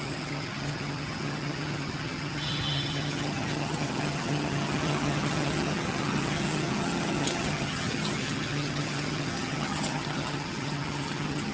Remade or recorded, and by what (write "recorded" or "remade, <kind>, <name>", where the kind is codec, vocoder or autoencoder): remade, vocoder, HiFi-GAN